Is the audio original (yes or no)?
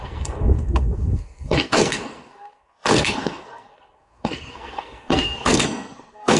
no